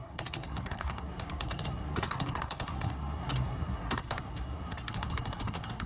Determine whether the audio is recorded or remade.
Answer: remade